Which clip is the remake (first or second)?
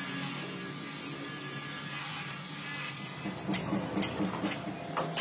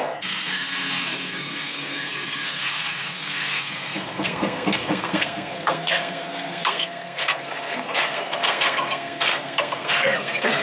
second